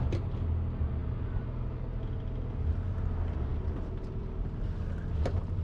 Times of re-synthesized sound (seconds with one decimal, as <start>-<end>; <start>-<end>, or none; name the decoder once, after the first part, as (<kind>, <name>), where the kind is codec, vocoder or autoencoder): none